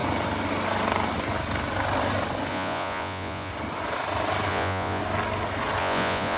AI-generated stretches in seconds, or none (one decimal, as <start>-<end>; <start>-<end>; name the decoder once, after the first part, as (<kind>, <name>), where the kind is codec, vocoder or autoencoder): 2.5-3.5 (vocoder, Vocos); 4.5-5.0; 5.8-6.4